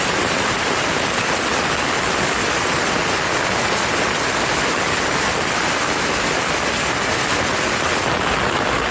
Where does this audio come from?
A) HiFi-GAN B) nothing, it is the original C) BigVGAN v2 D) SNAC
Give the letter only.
B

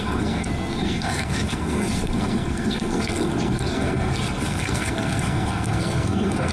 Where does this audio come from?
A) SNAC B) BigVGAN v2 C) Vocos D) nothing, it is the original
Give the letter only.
A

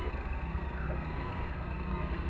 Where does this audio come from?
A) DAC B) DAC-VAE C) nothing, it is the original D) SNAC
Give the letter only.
D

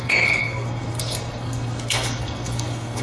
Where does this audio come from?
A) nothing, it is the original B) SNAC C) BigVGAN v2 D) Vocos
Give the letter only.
B